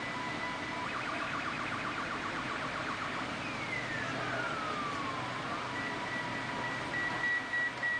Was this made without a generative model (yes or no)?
yes